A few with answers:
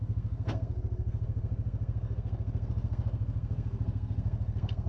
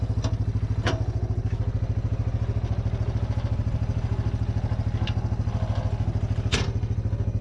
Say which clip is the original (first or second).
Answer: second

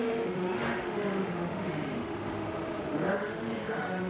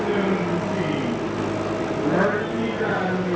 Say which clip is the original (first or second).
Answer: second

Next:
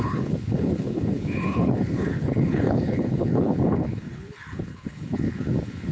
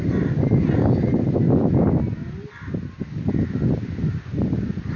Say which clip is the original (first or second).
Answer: second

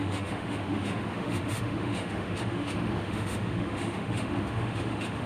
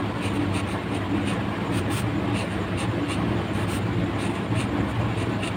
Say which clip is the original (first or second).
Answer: second